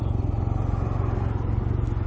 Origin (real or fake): real